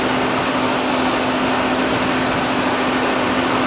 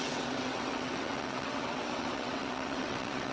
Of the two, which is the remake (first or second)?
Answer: second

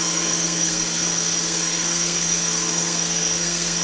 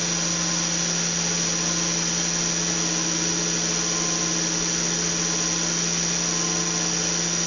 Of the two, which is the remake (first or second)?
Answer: first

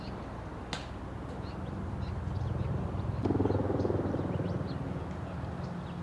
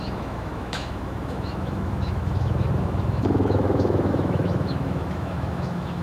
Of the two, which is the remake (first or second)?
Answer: second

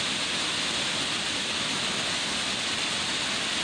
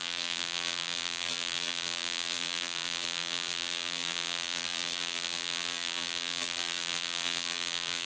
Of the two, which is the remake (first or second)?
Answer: second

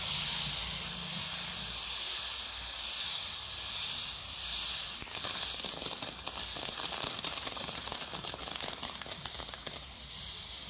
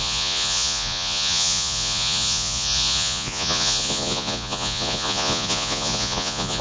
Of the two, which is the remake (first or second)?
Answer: second